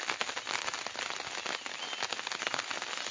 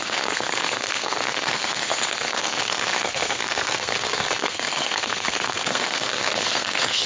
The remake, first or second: second